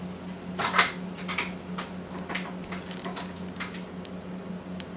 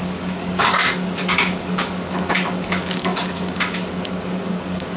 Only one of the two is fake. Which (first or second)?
second